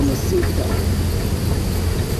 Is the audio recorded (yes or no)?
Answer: yes